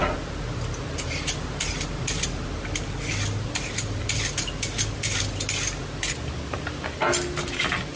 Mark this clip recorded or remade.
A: recorded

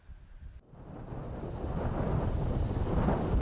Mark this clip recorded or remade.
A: recorded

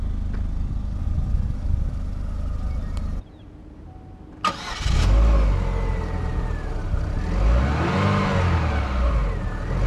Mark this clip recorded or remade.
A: recorded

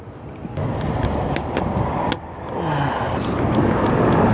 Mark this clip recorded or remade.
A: recorded